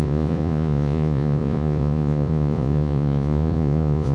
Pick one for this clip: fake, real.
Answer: fake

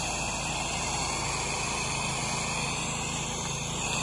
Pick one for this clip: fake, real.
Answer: real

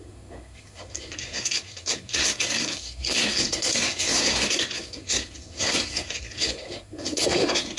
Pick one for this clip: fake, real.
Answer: fake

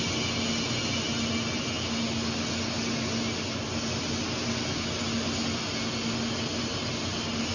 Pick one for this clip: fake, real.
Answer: real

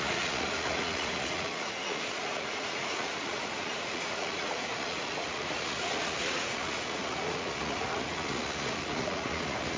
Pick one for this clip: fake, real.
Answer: fake